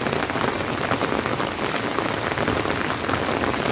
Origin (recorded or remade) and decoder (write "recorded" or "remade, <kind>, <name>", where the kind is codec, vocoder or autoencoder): recorded